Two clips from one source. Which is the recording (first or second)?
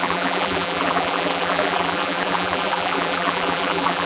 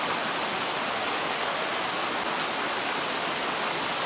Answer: second